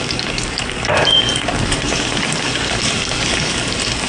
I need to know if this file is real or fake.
fake